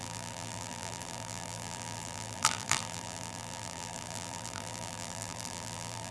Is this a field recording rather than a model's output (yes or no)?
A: no